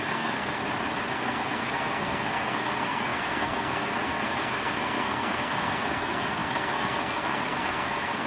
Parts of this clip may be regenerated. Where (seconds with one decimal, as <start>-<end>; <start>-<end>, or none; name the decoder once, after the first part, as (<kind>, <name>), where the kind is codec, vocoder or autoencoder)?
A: 0.0-0.6 (codec, SNAC); 1.1-8.3

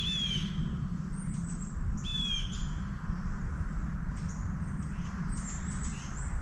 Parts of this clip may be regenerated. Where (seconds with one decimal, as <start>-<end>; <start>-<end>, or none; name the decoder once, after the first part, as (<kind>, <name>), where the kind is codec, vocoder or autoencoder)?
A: none

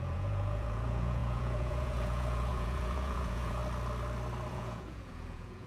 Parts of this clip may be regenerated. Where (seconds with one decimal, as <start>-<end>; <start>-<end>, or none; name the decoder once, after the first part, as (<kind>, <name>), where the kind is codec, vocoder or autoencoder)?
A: 0.0-3.6 (vocoder, Vocos); 4.5-5.7

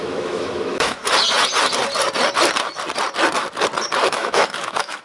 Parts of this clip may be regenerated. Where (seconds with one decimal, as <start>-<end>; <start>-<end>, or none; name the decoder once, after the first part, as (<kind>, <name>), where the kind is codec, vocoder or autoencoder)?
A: 0.0-1.0 (autoencoder, DAC-VAE); 4.0-5.0

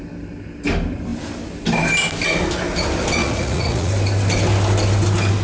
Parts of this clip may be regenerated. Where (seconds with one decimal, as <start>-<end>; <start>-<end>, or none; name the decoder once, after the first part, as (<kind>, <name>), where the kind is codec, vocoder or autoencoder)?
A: 3.2-3.9 (vocoder, Vocos)

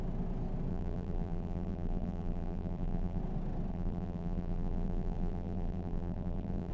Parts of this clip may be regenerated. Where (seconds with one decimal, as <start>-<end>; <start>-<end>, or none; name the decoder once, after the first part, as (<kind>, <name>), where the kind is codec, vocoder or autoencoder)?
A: 0.7-3.2 (vocoder, BigVGAN v2); 3.7-6.7

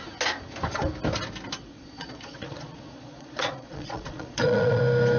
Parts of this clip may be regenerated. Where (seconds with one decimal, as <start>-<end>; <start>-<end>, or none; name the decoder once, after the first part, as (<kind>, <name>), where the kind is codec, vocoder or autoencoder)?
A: 1.7-4.8 (vocoder, Vocos)

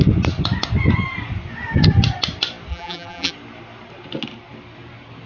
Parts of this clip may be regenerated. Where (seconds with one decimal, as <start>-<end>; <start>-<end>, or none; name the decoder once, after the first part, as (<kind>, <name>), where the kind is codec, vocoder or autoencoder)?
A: 2.7-3.3 (vocoder, BigVGAN v2)